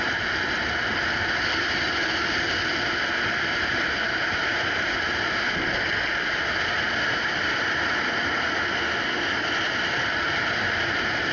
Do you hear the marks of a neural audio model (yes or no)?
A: no